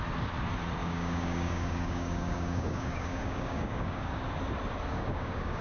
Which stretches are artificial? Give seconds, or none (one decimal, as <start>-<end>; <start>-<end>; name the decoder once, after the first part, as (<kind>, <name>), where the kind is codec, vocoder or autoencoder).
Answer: 0.8-4.2 (codec, DAC); 4.9-5.6